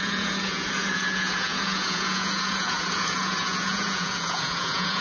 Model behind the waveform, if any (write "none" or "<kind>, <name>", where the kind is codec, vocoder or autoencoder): vocoder, Vocos